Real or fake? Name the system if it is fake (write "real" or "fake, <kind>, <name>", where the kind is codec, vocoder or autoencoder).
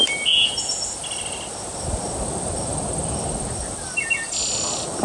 real